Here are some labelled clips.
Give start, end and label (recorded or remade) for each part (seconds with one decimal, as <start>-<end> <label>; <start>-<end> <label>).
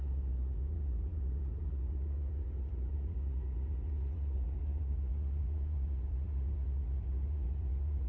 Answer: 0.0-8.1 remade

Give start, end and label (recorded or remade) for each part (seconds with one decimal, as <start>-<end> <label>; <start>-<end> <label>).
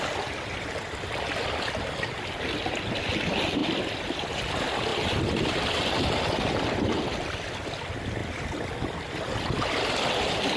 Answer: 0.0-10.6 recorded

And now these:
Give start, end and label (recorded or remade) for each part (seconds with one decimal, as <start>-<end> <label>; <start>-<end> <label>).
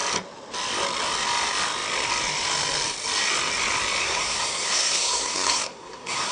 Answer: 0.0-4.0 recorded; 4.0-6.3 remade